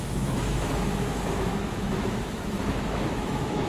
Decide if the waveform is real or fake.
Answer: fake